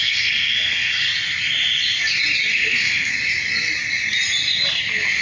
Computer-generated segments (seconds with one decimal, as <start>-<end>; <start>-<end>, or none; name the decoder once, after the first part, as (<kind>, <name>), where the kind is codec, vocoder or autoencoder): 0.0-0.9 (codec, SNAC); 2.5-3.1